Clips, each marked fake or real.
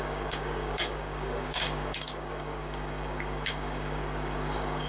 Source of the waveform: fake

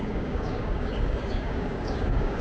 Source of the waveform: fake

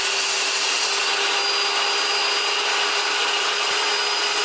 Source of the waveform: real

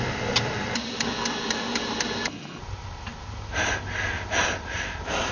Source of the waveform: real